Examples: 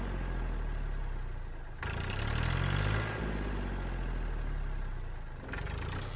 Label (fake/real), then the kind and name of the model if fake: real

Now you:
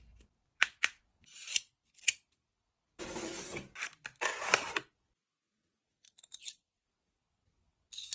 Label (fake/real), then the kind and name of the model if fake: real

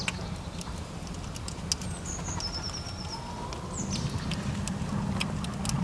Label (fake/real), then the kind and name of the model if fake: real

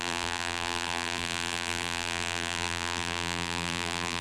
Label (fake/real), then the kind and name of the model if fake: fake, vocoder, BigVGAN v2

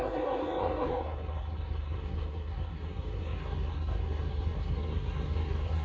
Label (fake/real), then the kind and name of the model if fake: fake, codec, SNAC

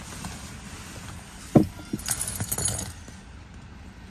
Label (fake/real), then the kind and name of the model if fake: real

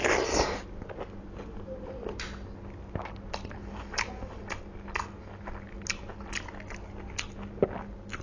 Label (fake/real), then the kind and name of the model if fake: real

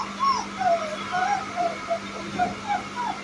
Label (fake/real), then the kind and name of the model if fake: real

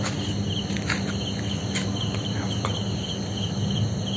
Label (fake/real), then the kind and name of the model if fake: real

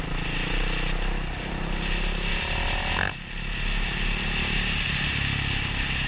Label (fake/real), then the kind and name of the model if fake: real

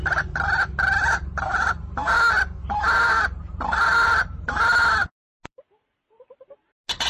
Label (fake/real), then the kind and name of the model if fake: real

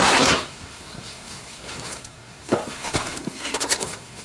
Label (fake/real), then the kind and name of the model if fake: fake, codec, SNAC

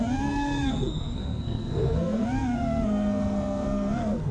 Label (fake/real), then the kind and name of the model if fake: fake, codec, SNAC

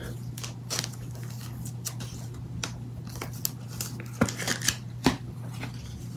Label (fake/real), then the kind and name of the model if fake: real